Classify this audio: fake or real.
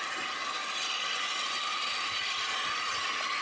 real